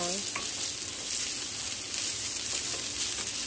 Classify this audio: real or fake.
real